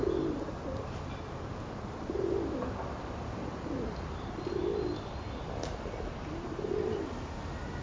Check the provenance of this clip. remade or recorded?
recorded